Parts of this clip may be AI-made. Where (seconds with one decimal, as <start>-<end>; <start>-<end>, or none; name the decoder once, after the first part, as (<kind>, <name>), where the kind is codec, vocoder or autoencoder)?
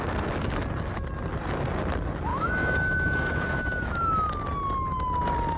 2.3-4.3 (autoencoder, DAC-VAE)